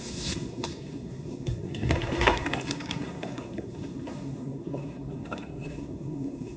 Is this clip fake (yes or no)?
yes